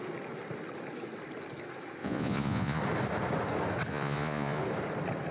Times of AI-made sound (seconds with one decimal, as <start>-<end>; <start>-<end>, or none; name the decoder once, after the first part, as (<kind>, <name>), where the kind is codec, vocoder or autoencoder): 2.0-2.8 (vocoder, Vocos); 3.9-4.6